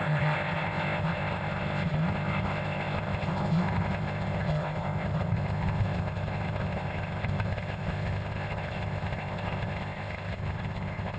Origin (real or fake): fake